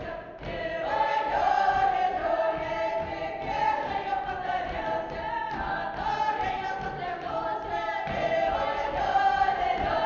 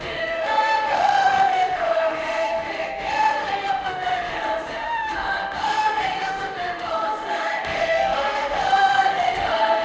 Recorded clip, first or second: first